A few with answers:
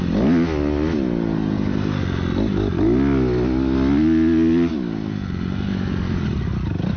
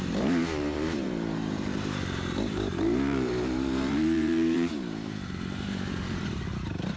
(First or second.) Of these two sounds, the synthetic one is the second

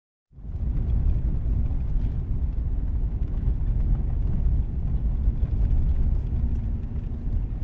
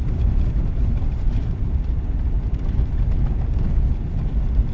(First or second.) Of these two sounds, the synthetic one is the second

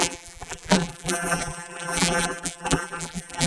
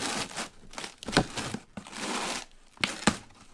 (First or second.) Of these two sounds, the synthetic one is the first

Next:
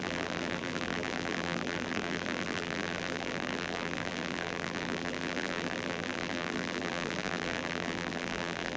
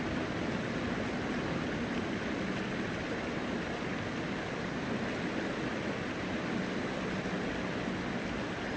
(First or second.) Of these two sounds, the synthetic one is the first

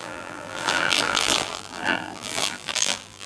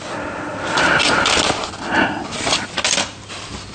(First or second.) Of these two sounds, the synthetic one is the first